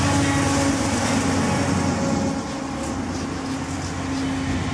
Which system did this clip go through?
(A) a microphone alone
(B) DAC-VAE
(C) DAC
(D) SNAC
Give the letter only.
A